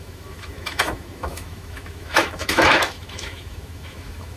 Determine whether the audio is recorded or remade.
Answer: remade